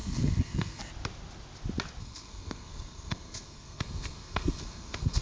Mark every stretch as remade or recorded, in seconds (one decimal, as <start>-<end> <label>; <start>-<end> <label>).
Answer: 0.0-0.8 remade; 0.8-2.0 recorded; 2.0-5.2 remade